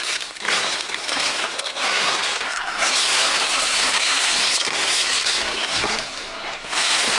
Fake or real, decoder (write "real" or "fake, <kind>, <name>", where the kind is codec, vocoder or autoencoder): fake, codec, SNAC